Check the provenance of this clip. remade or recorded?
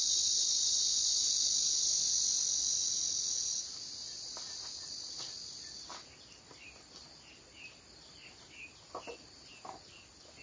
recorded